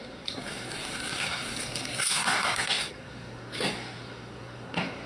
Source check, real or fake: fake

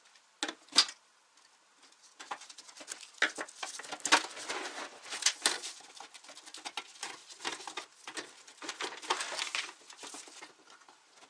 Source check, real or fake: real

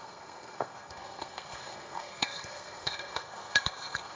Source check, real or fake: fake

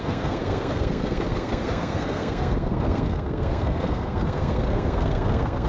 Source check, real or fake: fake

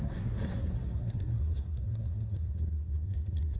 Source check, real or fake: fake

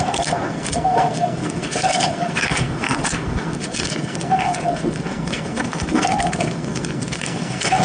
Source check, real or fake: fake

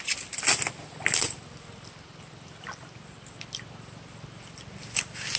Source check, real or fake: real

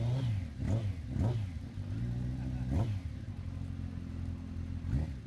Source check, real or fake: real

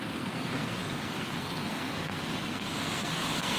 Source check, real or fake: fake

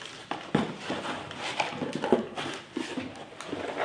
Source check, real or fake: real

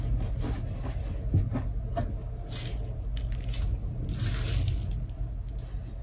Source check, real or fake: real